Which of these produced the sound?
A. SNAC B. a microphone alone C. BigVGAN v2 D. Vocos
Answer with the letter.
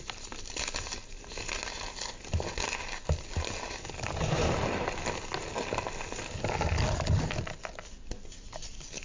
B